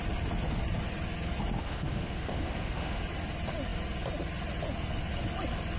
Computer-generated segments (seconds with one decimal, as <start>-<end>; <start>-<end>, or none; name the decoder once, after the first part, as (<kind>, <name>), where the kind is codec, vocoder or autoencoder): 1.6-3.0 (autoencoder, DAC-VAE)